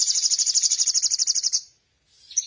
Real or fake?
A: fake